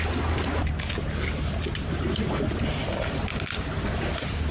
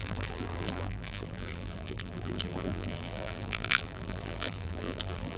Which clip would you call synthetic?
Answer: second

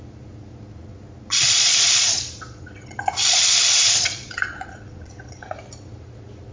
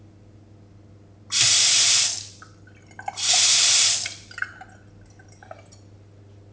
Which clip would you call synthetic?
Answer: first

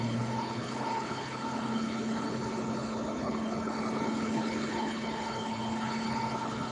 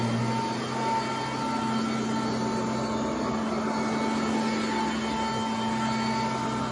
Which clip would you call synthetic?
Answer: first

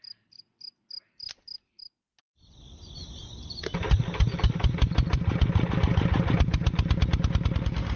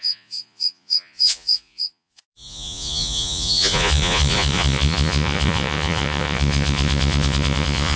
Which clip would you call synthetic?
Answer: second